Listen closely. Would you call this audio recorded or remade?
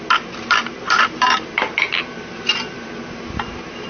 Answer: remade